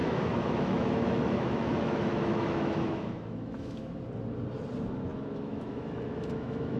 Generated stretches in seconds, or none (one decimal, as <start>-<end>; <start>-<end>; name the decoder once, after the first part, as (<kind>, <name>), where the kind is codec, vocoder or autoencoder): 0.0-4.0 (autoencoder, DAC-VAE); 5.1-6.8